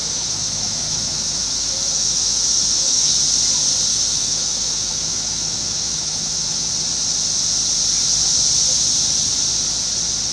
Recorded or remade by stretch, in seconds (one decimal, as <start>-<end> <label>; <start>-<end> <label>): 0.0-3.1 remade; 3.1-3.9 recorded; 3.9-6.7 remade; 6.7-10.3 recorded